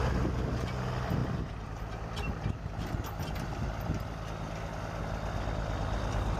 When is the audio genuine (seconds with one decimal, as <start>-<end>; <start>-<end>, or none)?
0.0-6.4